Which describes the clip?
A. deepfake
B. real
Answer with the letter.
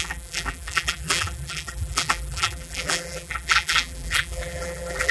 A